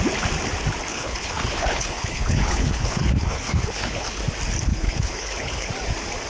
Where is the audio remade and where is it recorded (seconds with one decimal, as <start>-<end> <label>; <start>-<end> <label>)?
0.0-0.9 recorded; 0.9-4.2 remade; 4.2-4.7 recorded; 4.7-5.7 remade; 5.7-6.3 recorded